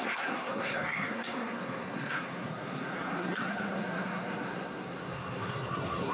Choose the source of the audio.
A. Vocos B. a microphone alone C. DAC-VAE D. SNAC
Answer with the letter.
D